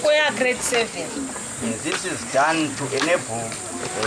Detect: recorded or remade recorded